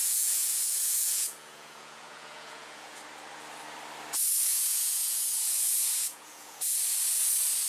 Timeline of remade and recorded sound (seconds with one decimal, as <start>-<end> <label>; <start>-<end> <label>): 0.0-3.0 remade; 3.0-4.5 recorded; 4.5-6.6 remade; 6.6-7.7 recorded

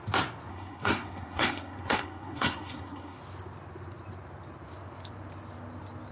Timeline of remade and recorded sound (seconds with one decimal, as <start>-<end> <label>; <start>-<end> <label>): 0.0-0.5 recorded; 0.5-3.2 remade; 3.2-6.1 recorded

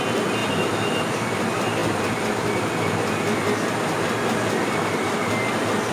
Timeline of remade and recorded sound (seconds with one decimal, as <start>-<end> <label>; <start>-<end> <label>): 0.0-0.4 recorded; 0.4-1.0 remade; 1.0-1.8 recorded; 1.8-5.3 remade; 5.3-5.9 recorded

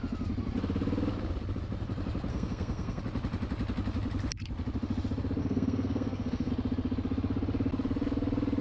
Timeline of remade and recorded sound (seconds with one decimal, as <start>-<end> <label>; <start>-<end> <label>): 0.0-2.3 recorded; 2.3-3.0 remade; 3.0-5.4 recorded; 5.4-6.5 remade; 6.5-8.6 recorded

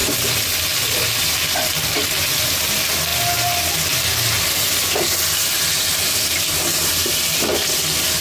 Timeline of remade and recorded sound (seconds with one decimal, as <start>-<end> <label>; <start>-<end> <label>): 0.0-8.2 recorded

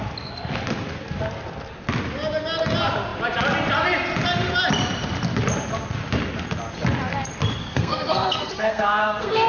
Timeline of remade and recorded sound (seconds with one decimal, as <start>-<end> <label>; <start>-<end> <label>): 0.0-7.6 recorded; 7.6-9.5 remade